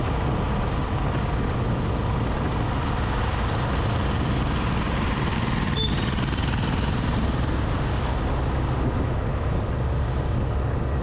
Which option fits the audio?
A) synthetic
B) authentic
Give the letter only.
B